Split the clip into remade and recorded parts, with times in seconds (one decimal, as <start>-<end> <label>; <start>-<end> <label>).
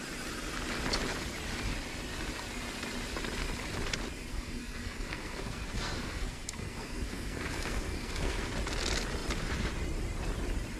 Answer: 0.0-4.3 recorded; 4.3-8.5 remade; 8.5-10.8 recorded